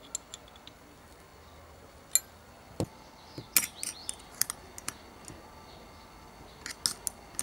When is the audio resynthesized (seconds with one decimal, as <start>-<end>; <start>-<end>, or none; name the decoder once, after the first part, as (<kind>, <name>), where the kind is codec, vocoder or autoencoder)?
none